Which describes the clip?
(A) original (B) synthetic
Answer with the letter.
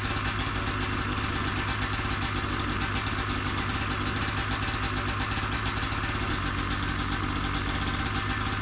A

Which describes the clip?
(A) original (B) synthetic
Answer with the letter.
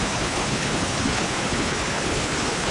B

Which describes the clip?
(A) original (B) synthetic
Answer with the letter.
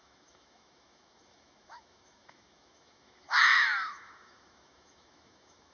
B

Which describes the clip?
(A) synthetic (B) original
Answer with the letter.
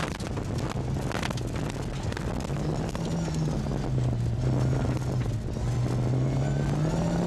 B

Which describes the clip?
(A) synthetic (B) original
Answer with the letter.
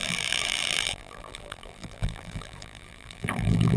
A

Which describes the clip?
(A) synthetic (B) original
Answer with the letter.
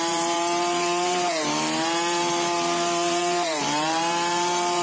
A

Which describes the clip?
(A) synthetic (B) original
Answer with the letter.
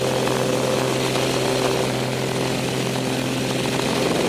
B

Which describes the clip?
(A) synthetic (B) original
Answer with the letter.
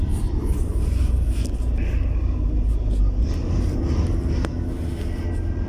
B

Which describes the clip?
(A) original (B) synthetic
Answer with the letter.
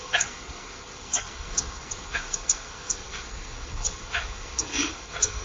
B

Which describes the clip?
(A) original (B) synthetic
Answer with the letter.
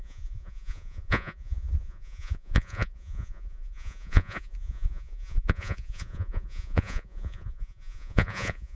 B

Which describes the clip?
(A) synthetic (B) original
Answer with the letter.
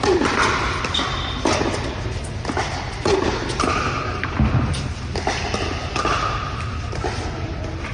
B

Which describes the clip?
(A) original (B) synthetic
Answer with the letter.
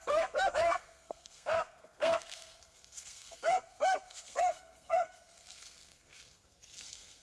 B